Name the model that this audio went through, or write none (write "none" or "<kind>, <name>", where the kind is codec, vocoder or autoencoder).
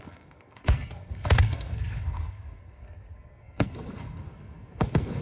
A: codec, SNAC